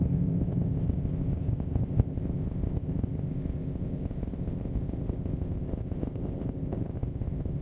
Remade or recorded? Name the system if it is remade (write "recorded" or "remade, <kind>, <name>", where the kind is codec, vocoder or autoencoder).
remade, codec, ZipCodec